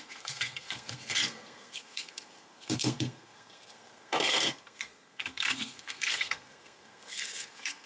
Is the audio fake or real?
fake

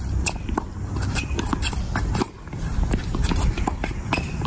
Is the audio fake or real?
real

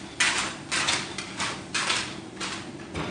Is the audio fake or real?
real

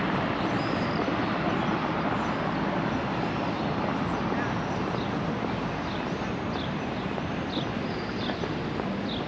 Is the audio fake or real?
real